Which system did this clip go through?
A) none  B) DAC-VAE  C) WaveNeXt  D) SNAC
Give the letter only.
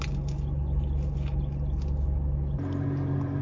A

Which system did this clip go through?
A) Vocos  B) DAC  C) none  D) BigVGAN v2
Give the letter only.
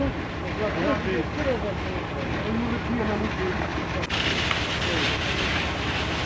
C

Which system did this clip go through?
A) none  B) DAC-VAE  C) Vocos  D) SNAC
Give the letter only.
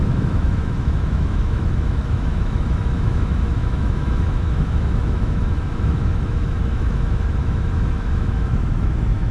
B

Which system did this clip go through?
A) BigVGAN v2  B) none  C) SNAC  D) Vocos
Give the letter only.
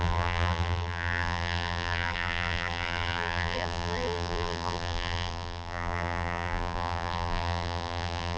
A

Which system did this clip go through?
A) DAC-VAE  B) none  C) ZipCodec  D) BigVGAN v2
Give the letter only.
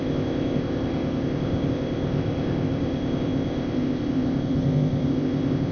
C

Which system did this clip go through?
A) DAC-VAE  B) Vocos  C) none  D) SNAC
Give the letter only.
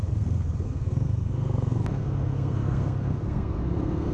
D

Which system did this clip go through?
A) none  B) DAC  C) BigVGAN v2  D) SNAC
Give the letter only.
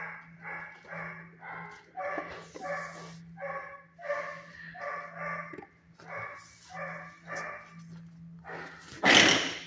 A